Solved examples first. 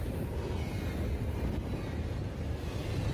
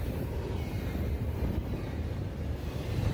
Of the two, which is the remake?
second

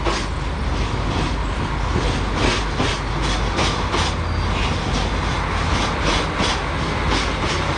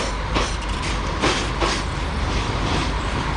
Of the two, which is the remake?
second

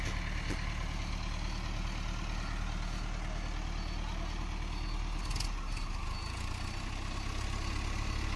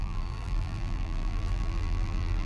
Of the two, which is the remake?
second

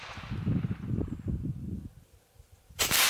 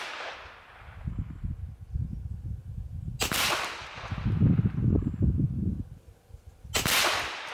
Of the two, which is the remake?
first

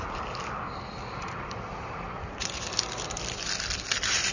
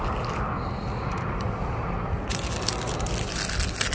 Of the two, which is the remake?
first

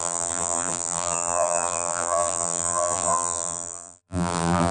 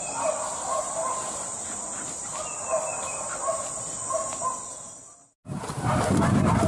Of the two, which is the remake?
first